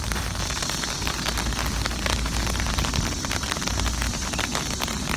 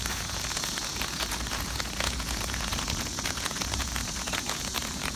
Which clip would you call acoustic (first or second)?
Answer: first